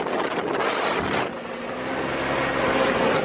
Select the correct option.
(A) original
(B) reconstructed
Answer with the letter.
A